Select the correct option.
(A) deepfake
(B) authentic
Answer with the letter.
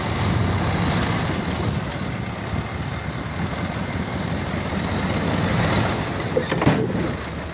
B